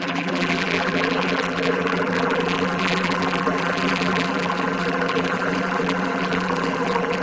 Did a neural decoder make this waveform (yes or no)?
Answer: yes